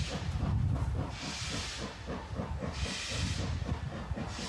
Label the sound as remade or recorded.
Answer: recorded